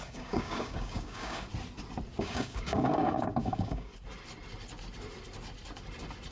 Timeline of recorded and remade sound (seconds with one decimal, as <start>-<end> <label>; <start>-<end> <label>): 0.0-1.5 remade; 1.5-2.2 recorded; 2.2-3.9 remade; 3.9-6.3 recorded